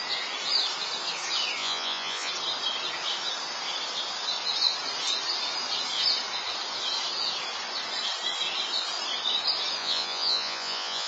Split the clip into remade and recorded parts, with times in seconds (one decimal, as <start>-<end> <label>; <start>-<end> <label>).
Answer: 0.0-1.6 recorded; 1.6-2.3 remade; 2.3-9.8 recorded; 9.8-11.1 remade

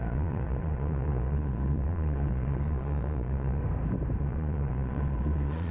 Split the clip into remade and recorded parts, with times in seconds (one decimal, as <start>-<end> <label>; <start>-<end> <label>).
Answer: 0.0-3.6 remade; 3.6-4.2 recorded; 4.2-5.7 remade

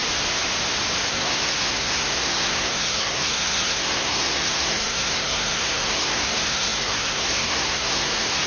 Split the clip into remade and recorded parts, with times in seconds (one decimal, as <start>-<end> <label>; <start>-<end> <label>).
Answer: 0.0-1.1 recorded; 1.1-8.5 remade

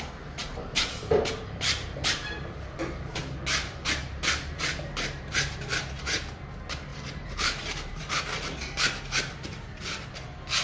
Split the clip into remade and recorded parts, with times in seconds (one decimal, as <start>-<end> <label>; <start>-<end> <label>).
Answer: 0.0-0.4 recorded; 0.4-3.2 remade; 3.2-3.6 recorded; 3.6-5.8 remade; 5.8-6.9 recorded; 6.9-8.2 remade; 8.2-10.6 recorded

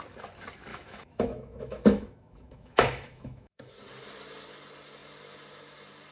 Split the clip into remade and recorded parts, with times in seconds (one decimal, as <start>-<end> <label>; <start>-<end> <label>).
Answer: 0.0-0.7 recorded; 0.7-3.7 remade; 3.7-6.1 recorded

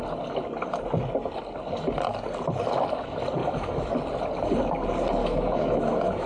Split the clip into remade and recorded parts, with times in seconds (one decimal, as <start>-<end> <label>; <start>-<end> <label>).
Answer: 0.0-3.4 recorded; 3.4-3.9 remade; 3.9-5.2 recorded; 5.2-6.3 remade